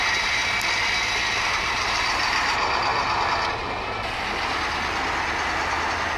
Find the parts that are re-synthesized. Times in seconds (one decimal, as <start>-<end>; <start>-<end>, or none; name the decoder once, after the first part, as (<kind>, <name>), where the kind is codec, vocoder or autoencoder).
0.0-0.4 (vocoder, BigVGAN v2); 1.4-2.9